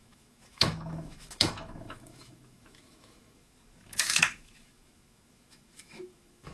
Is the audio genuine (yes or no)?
no